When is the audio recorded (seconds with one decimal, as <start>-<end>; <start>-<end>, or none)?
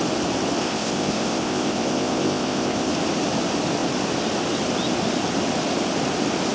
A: 0.0-0.6; 2.9-6.5